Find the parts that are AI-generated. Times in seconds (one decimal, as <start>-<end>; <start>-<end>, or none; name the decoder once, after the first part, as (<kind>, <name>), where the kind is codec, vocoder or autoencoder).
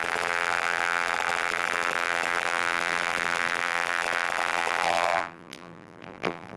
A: 0.0-6.6 (vocoder, BigVGAN v2)